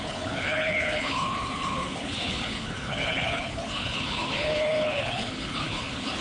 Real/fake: fake